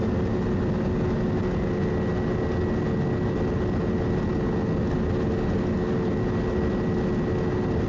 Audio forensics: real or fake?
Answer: real